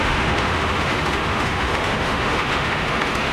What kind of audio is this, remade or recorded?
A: remade